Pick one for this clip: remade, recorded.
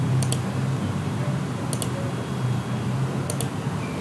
recorded